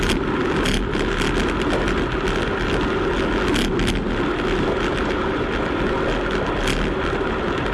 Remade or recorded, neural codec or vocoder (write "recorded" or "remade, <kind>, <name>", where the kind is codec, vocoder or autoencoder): recorded